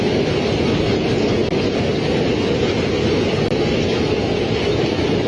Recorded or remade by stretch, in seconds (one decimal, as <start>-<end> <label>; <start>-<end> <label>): 0.0-5.3 recorded

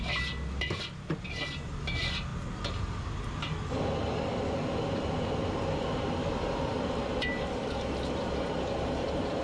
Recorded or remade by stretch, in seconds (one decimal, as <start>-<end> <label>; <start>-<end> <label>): 0.0-9.4 recorded

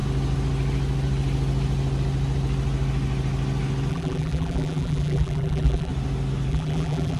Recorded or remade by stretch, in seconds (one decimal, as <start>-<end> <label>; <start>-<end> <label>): 0.0-3.9 recorded; 3.9-5.9 remade; 5.9-6.5 recorded; 6.5-7.2 remade

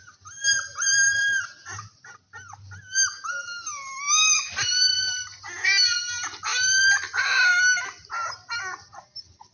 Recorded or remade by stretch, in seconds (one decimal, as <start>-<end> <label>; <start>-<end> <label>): 0.0-0.7 recorded; 0.7-1.2 remade; 1.2-4.9 recorded; 4.9-5.5 remade; 5.5-9.5 recorded

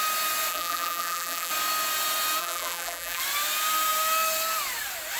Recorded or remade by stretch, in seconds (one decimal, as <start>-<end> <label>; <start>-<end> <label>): 0.0-0.5 recorded; 0.5-1.5 remade; 1.5-2.4 recorded; 2.4-3.2 remade; 3.2-5.2 recorded

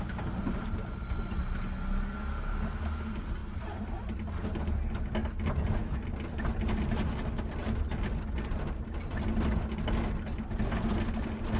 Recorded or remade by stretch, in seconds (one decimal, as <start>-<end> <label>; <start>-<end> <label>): 0.0-3.4 recorded; 3.4-4.0 remade; 4.0-11.6 recorded